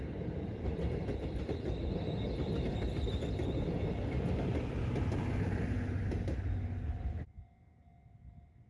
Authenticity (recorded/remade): recorded